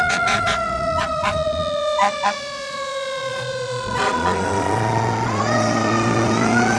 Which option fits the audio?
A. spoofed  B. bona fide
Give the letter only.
A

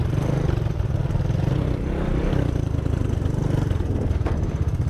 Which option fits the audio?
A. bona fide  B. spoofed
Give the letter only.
A